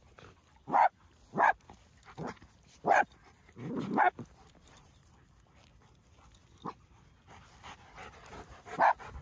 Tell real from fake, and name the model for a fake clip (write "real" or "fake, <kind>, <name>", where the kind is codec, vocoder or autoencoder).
real